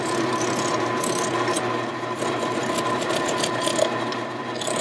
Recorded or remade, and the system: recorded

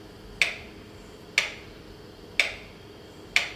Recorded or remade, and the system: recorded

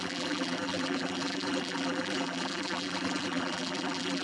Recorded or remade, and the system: remade, vocoder, BigVGAN v2